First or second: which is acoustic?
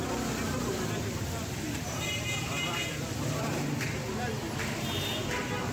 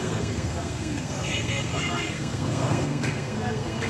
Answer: first